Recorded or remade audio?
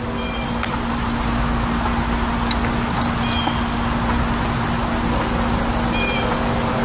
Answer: recorded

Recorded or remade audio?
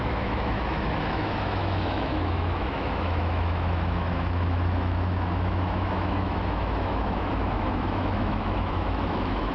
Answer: remade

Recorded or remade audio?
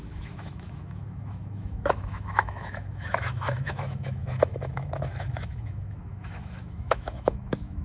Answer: remade